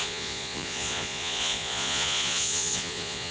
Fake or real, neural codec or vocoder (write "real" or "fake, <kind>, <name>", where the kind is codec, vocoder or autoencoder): fake, vocoder, Vocos